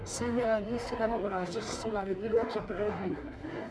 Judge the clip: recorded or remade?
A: remade